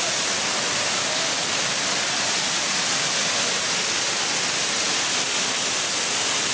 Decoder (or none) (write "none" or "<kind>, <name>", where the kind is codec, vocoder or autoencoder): none